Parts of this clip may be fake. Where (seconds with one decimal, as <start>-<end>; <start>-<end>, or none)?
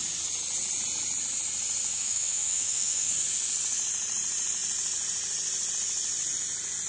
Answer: 1.9-3.1